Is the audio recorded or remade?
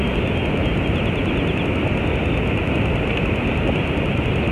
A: remade